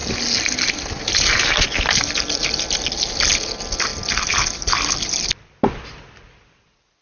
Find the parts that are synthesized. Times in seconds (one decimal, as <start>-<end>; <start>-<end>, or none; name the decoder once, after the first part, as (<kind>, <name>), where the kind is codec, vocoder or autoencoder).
none